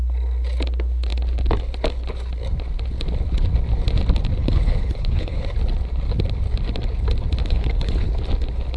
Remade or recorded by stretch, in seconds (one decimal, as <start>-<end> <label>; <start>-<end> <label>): 0.0-4.4 recorded; 4.4-5.4 remade; 5.4-7.4 recorded; 7.4-8.1 remade; 8.1-8.8 recorded